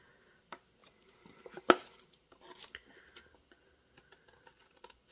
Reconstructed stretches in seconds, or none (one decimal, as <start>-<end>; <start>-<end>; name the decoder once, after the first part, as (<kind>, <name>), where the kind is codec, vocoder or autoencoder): none